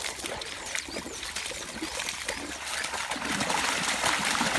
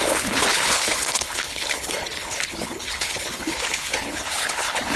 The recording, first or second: first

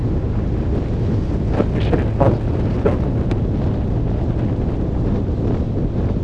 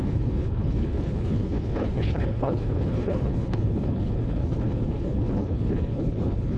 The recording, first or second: first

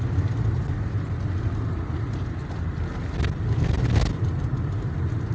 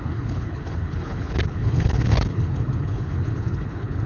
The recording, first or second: first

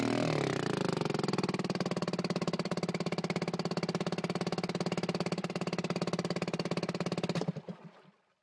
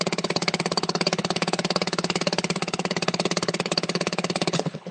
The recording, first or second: first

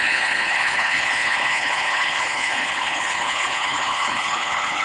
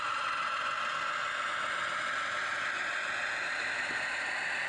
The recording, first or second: second